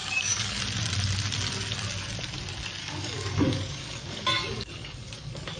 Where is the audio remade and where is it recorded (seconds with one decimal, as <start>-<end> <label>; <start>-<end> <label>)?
0.0-0.6 remade; 0.6-2.8 recorded; 2.8-5.6 remade